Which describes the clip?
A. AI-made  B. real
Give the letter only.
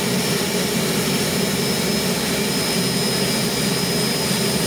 B